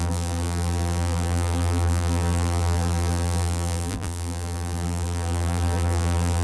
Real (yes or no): no